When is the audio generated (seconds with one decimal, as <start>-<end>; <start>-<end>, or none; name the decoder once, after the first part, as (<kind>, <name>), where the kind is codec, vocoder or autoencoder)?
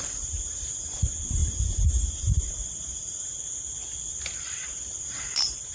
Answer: 0.0-3.3 (vocoder, BigVGAN v2); 4.4-5.7